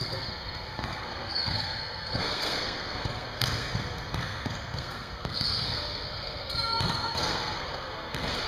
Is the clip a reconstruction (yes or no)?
yes